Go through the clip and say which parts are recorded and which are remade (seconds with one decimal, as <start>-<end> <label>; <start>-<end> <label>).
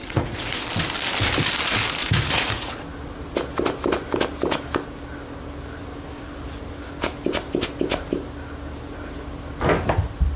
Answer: 0.0-0.6 remade; 0.6-2.0 recorded; 2.0-2.8 remade; 2.8-10.4 recorded